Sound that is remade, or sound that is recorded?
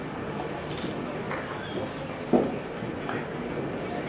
recorded